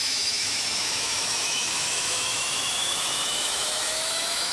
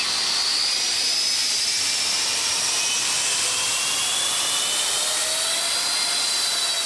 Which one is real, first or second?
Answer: second